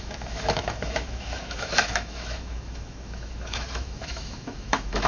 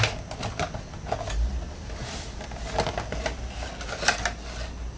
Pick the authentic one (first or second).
second